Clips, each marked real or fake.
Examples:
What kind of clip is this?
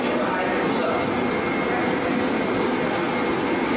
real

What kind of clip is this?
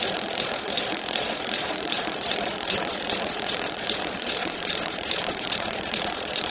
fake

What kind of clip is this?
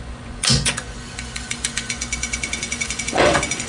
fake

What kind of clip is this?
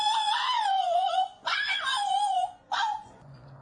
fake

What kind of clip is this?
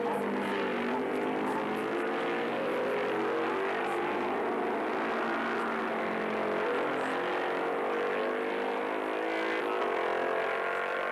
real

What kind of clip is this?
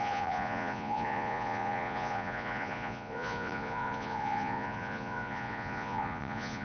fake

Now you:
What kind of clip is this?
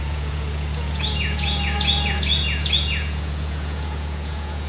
fake